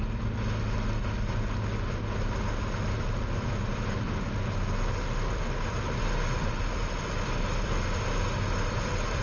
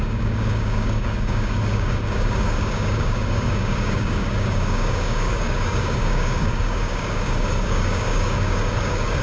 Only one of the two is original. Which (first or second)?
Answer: first